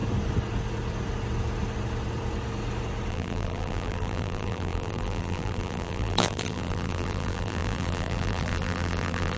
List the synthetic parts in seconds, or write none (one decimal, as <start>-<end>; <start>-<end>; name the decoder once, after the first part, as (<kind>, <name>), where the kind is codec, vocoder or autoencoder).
3.1-9.4 (vocoder, BigVGAN v2)